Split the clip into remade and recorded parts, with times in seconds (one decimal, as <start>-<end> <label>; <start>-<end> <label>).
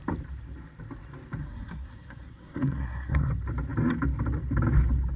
0.0-1.4 recorded; 1.4-3.3 remade; 3.3-5.2 recorded